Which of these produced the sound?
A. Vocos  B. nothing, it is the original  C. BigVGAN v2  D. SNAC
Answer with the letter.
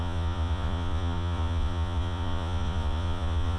A